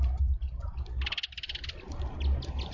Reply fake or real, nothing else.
real